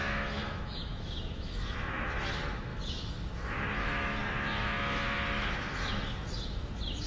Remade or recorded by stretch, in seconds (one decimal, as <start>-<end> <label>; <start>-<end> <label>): 0.0-7.1 remade